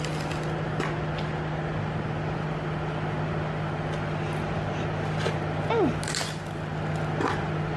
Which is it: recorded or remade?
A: recorded